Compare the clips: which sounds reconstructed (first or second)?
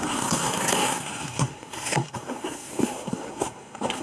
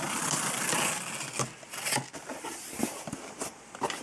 first